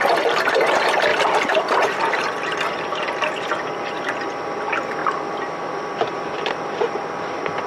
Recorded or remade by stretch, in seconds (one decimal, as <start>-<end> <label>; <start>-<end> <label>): 0.0-1.1 recorded; 1.1-2.8 remade; 2.8-7.7 recorded